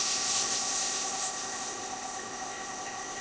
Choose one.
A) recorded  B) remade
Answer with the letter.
B